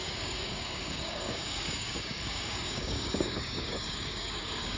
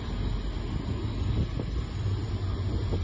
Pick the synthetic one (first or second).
first